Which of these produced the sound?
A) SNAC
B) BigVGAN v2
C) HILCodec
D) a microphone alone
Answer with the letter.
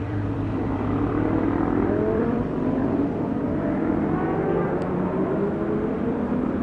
B